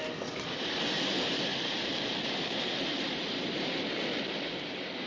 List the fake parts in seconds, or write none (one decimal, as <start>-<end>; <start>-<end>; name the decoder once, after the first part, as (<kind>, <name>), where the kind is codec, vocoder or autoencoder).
1.5-3.9 (vocoder, BigVGAN v2)